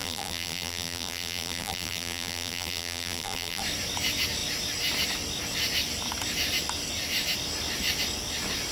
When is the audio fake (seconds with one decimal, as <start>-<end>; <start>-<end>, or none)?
0.0-3.6